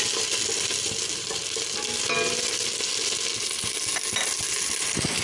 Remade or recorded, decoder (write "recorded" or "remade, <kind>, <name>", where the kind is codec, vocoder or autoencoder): recorded